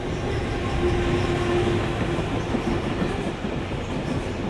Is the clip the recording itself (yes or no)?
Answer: yes